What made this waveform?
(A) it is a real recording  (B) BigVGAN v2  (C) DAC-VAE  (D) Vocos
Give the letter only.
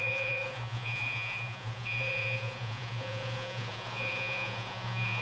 D